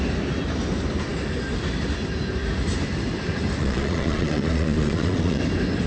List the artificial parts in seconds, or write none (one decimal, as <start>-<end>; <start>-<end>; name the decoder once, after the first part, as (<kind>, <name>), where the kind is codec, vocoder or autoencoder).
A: 3.6-5.4 (vocoder, Vocos)

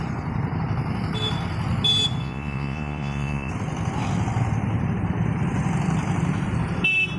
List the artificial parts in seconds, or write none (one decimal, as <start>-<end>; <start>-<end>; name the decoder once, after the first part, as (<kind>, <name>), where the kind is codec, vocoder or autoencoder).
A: 2.2-3.5 (vocoder, Vocos)

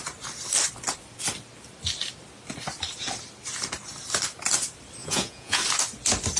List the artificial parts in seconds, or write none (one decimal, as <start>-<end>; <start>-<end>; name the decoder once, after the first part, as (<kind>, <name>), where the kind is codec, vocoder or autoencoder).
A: 5.0-5.6 (vocoder, Vocos)

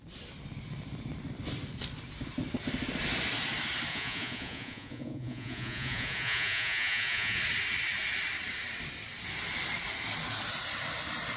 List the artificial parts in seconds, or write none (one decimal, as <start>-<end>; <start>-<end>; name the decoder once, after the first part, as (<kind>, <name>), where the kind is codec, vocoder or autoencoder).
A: 3.9-7.4 (vocoder, Vocos)